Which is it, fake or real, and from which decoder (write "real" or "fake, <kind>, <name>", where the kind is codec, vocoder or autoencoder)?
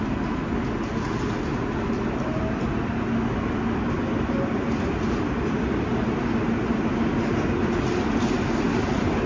real